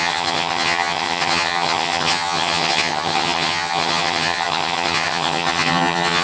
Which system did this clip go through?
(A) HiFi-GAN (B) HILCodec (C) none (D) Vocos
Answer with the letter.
A